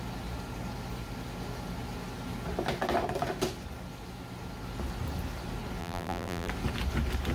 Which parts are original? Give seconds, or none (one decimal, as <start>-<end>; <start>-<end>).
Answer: 0.0-5.8; 6.5-7.3